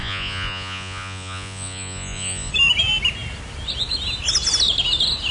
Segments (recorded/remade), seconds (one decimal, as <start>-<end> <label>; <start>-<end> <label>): 0.0-2.5 remade; 2.5-5.3 recorded